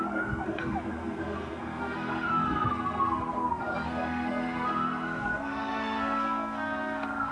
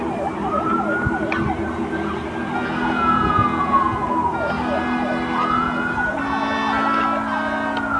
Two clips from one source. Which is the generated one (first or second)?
first